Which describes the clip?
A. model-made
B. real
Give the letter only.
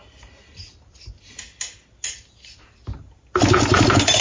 B